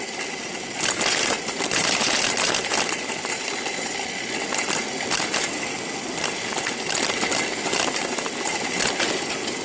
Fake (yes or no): no